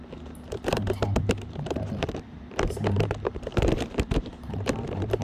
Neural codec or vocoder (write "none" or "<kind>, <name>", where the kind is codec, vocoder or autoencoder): vocoder, BigVGAN v2